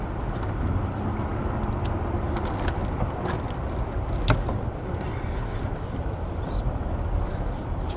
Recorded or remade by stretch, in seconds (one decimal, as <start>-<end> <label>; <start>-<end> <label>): 0.0-8.0 recorded